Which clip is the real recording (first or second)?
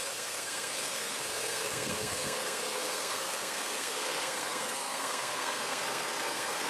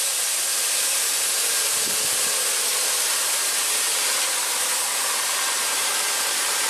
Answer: second